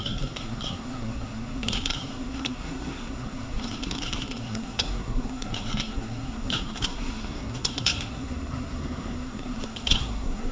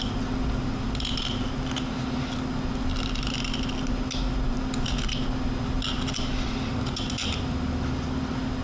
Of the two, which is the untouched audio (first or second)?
second